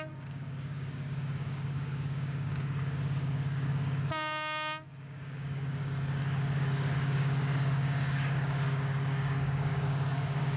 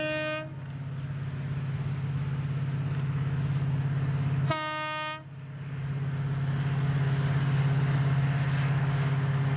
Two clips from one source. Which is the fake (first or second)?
first